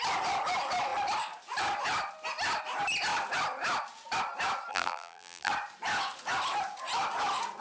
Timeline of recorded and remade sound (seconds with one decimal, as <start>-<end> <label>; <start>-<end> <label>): 0.0-4.7 recorded; 4.7-5.5 remade; 5.5-7.6 recorded